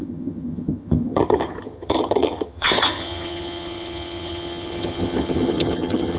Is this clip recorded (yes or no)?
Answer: no